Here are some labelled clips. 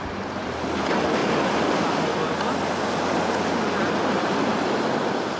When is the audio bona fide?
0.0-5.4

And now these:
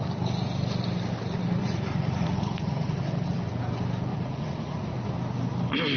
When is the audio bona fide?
0.0-1.6; 3.0-4.1; 5.1-6.0

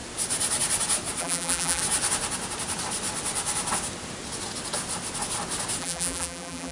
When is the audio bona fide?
0.0-1.2; 1.8-5.8

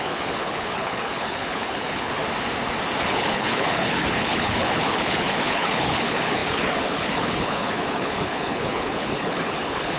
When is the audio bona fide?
2.2-3.0

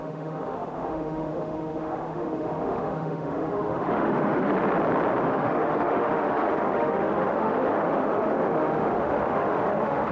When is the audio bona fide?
4.5-5.2

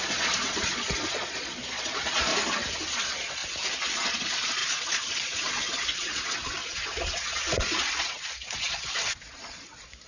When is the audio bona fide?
2.3-3.0; 3.4-3.9

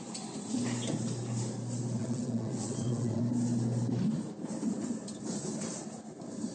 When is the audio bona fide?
0.0-2.0; 3.2-6.5